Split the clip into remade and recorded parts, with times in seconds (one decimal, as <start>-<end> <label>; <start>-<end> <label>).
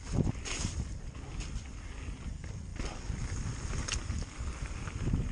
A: 0.0-5.3 recorded